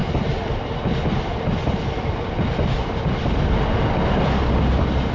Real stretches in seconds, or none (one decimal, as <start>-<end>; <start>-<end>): 0.0-5.1